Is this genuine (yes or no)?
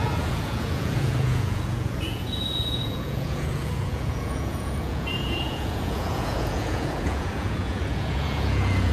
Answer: no